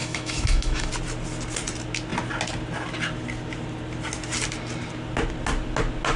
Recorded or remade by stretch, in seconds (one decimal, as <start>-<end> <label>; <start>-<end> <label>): 0.0-0.9 remade; 0.9-6.2 recorded